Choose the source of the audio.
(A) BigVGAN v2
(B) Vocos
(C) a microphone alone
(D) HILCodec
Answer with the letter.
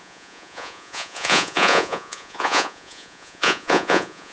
B